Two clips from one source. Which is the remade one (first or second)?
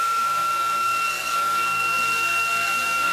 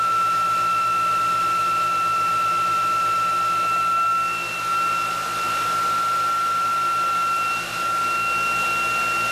first